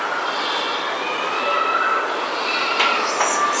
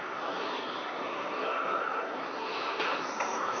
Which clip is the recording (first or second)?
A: first